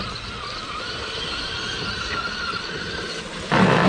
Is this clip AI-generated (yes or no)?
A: no